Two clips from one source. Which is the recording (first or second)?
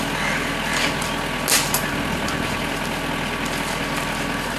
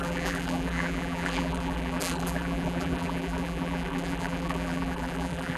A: first